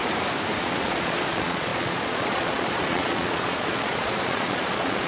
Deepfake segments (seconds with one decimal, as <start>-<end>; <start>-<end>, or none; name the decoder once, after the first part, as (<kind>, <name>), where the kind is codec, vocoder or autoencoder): 0.6-5.1 (vocoder, Vocos)